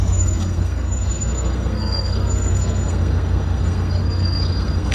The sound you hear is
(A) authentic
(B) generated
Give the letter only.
B